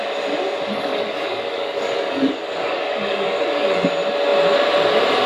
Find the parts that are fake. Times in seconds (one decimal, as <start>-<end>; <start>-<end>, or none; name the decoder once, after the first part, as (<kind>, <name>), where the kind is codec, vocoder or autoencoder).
0.7-3.9 (codec, DAC)